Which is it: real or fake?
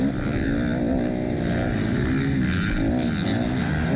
real